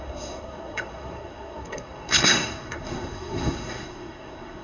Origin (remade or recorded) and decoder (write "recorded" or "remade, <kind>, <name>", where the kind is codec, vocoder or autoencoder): remade, codec, SNAC